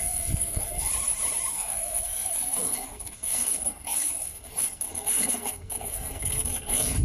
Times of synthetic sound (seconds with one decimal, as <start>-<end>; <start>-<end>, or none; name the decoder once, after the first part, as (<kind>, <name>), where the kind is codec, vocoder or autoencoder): 0.0-0.9 (codec, SNAC); 1.5-7.0